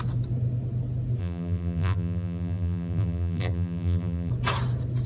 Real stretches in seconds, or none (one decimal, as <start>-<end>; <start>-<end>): 0.0-1.2; 4.3-5.1